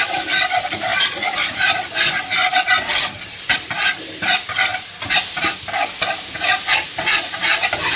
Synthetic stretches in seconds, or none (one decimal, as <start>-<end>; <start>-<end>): 0.0-8.0